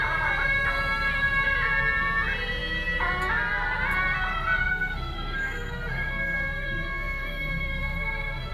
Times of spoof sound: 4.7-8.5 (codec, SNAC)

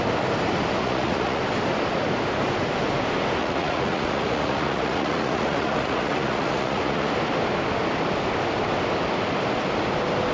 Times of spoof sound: 0.8-1.4 (vocoder, Vocos); 3.4-7.1